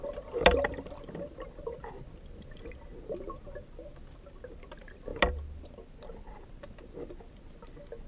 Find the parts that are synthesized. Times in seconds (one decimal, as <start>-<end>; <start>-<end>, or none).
none

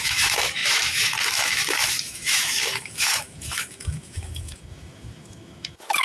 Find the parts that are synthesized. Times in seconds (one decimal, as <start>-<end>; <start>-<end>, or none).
0.0-6.0

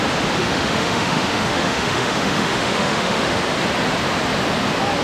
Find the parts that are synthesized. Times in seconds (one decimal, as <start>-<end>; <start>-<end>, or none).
0.4-3.4

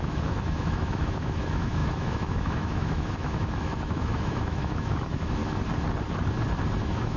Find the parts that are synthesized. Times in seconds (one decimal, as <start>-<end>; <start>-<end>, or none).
0.0-5.4; 6.8-7.2

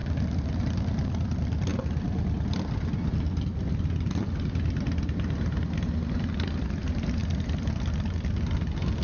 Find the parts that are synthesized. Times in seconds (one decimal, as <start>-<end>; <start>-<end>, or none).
none